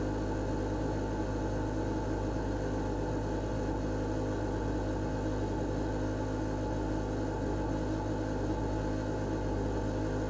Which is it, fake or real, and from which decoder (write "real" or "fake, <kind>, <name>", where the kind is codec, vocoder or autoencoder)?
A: real